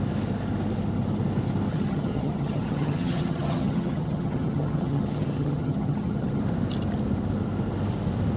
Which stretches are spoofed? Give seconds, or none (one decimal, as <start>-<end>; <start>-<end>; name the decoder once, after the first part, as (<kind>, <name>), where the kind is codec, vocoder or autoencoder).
1.7-6.4 (vocoder, HiFi-GAN)